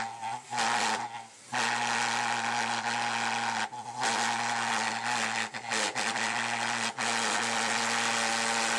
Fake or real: real